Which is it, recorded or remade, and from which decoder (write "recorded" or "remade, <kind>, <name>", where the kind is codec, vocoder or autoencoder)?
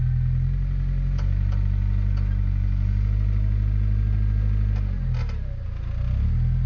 recorded